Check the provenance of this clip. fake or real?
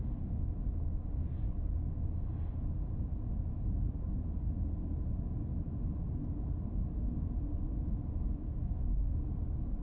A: real